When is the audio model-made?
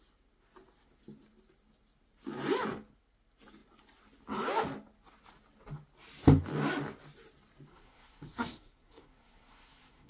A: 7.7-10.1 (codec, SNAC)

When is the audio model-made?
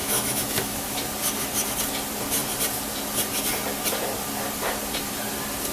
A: 0.0-1.0 (autoencoder, DAC-VAE)